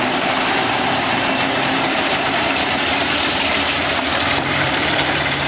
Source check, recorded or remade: remade